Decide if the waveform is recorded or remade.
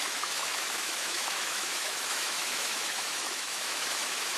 remade